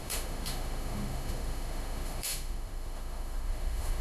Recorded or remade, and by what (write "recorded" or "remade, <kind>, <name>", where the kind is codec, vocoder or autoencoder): remade, autoencoder, DAC-VAE